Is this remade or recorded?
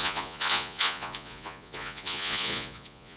remade